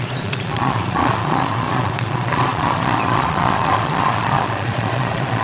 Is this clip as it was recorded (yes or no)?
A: no